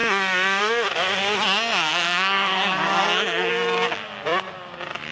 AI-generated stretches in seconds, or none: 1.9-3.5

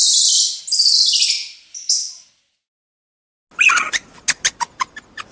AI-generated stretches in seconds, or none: none

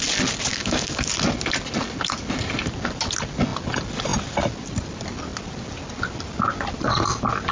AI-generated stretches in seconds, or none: 0.5-1.1

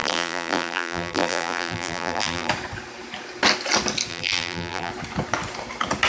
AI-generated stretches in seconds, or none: 0.0-2.5; 4.1-4.9

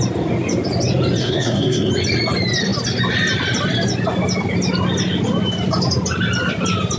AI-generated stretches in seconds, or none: 1.2-1.9

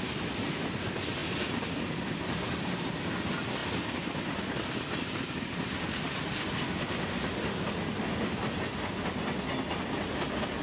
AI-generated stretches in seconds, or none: none

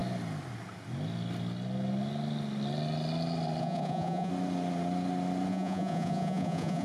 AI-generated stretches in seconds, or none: 3.6-4.3; 5.5-6.8